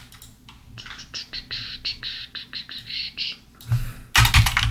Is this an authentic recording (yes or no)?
yes